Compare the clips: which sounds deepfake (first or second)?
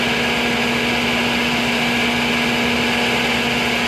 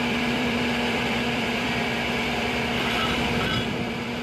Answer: second